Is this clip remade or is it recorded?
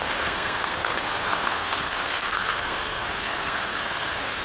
remade